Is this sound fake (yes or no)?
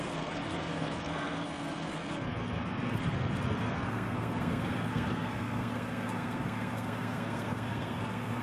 yes